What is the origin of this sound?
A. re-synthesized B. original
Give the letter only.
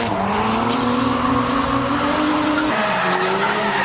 B